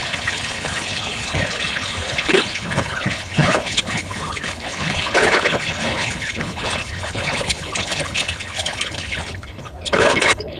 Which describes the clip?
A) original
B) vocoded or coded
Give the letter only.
B